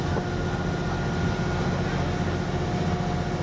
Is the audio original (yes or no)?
yes